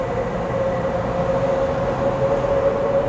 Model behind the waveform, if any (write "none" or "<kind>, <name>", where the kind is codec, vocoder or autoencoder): none